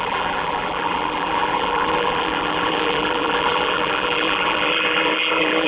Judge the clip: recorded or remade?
remade